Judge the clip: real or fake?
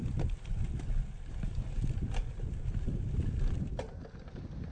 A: real